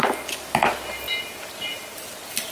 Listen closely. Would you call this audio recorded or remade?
recorded